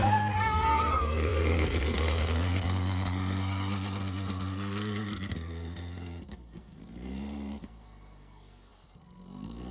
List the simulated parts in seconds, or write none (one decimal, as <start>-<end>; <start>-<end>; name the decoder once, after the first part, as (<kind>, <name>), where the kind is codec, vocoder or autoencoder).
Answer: 0.0-9.7 (codec, SNAC)